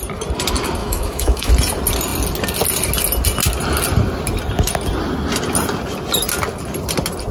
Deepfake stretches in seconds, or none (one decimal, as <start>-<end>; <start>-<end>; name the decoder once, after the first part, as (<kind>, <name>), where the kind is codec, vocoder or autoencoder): 0.8-1.5 (autoencoder, DAC-VAE)